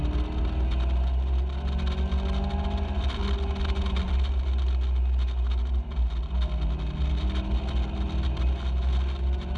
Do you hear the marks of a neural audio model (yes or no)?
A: no